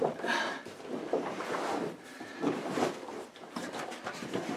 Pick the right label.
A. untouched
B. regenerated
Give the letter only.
B